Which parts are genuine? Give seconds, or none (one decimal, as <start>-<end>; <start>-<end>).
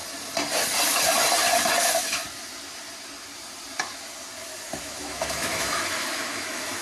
0.0-1.8; 2.2-4.8